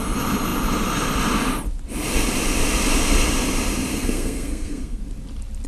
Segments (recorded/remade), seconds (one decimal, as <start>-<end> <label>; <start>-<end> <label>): 0.0-3.9 recorded; 3.9-5.0 remade; 5.0-5.7 recorded

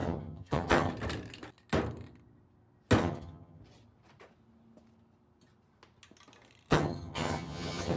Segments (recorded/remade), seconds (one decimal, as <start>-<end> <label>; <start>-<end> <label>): 0.0-0.9 remade; 0.9-3.0 recorded; 3.0-3.6 remade; 3.6-6.7 recorded; 6.7-8.0 remade

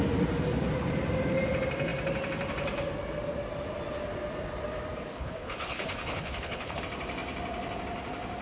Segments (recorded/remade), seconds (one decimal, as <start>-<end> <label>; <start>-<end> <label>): 0.0-5.1 recorded; 5.1-6.8 remade; 6.8-8.4 recorded